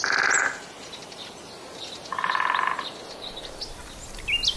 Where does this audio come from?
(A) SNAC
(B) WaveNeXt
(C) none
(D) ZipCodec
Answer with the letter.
C